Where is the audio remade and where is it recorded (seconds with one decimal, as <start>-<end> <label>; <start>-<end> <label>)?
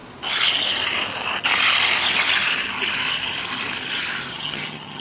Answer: 0.0-4.3 recorded; 4.3-5.0 remade